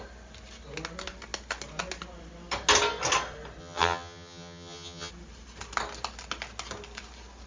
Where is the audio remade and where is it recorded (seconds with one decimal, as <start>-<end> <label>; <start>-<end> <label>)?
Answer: 0.0-3.6 recorded; 3.6-5.1 remade; 5.1-7.5 recorded